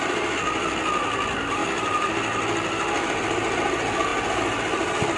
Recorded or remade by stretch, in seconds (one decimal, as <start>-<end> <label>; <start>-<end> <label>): 0.0-1.6 recorded; 1.6-2.1 remade; 2.1-5.2 recorded

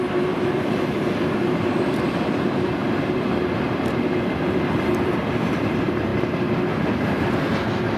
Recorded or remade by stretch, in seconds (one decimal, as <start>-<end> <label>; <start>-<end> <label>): 0.0-6.1 remade; 6.1-7.2 recorded; 7.2-8.0 remade

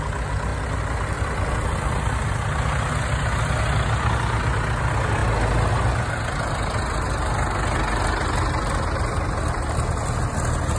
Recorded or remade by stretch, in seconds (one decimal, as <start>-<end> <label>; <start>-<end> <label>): 0.0-10.8 recorded

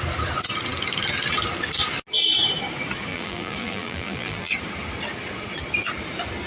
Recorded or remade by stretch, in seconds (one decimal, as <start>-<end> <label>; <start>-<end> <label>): 0.0-3.1 recorded; 3.1-4.5 remade; 4.5-6.5 recorded

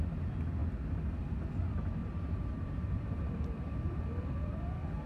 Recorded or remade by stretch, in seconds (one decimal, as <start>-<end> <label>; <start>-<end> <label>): 0.0-2.0 recorded; 2.0-4.0 remade; 4.0-5.1 recorded

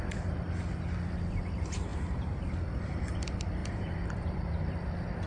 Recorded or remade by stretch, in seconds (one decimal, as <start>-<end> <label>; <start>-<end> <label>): 0.0-3.6 recorded; 3.6-4.6 remade; 4.6-5.3 recorded

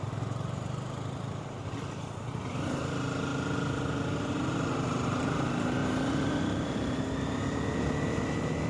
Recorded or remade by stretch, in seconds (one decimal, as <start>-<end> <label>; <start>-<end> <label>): 0.0-5.8 recorded; 5.8-7.0 remade; 7.0-8.7 recorded

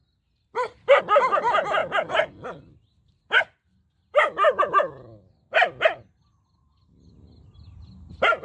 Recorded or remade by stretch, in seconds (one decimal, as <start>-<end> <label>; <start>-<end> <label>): 0.0-8.4 recorded